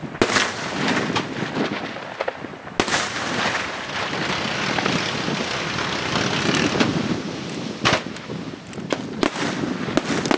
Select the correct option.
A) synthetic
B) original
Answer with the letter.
B